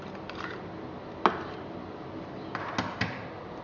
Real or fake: real